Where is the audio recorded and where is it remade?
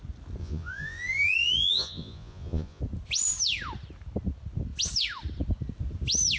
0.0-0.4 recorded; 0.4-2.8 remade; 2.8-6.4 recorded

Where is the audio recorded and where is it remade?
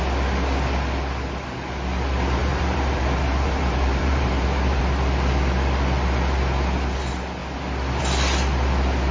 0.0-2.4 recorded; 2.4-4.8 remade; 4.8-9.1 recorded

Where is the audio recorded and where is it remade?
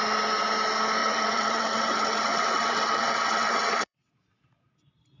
0.0-1.0 recorded; 1.0-4.1 remade; 4.1-5.2 recorded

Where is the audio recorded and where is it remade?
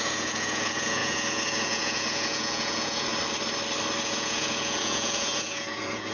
0.0-3.1 remade; 3.1-4.0 recorded; 4.0-6.1 remade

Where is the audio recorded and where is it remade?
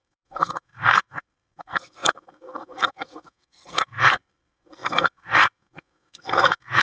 0.0-6.8 remade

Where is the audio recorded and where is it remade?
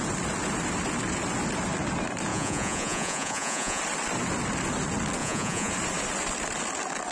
0.0-2.3 recorded; 2.3-3.8 remade; 3.8-5.2 recorded; 5.2-5.7 remade; 5.7-7.1 recorded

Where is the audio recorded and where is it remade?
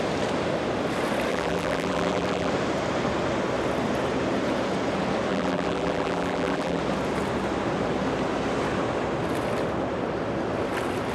0.0-1.3 recorded; 1.3-2.5 remade; 2.5-5.3 recorded; 5.3-6.8 remade; 6.8-11.1 recorded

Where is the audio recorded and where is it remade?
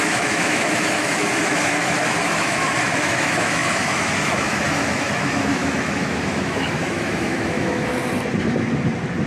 0.0-7.9 remade; 7.9-9.3 recorded